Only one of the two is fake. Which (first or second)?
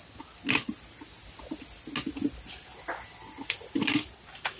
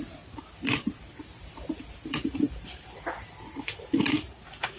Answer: second